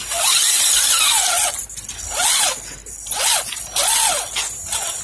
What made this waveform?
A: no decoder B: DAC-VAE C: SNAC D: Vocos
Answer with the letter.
A